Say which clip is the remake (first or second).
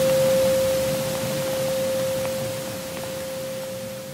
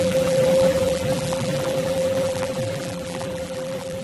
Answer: second